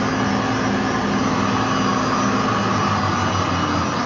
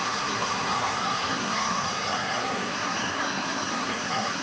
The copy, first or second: second